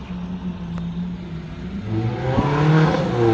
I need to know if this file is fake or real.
real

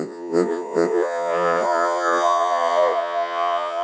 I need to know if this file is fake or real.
fake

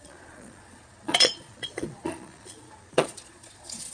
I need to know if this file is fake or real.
fake